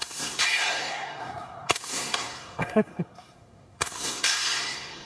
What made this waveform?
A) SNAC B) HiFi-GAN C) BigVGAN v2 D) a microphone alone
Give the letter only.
A